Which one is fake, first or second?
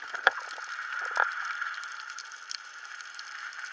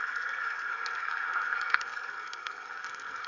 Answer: second